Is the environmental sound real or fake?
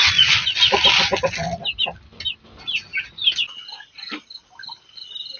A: real